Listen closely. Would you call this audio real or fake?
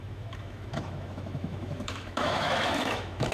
fake